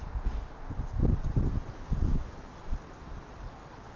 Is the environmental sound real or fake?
real